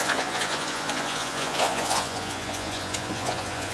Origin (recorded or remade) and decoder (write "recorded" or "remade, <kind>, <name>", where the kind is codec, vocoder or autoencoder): remade, vocoder, Vocos